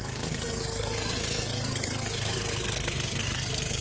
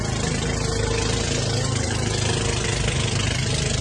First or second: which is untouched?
second